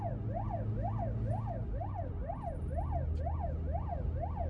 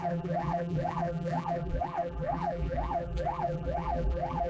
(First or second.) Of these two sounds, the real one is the first